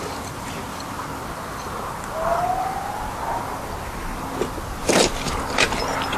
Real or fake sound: real